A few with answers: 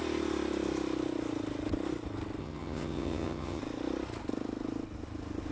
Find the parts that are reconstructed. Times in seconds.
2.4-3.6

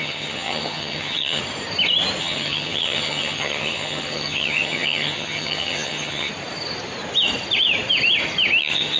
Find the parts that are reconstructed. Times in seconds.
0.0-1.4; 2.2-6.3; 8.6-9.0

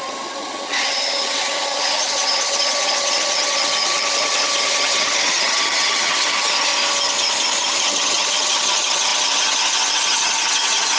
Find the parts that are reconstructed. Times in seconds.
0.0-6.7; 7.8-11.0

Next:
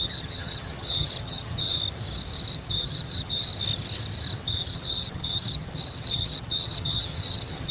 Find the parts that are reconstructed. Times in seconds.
0.0-1.8; 2.5-3.5; 4.4-7.7

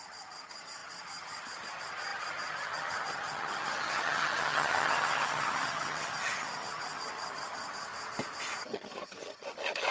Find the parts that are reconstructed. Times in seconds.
0.0-7.9; 8.6-9.9

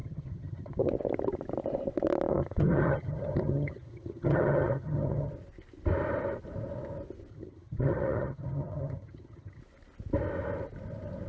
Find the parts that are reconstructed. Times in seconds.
0.0-0.9; 2.3-5.3; 7.3-9.6